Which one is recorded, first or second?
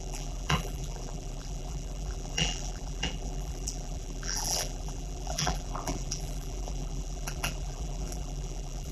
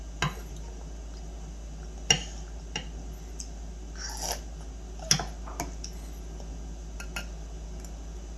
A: second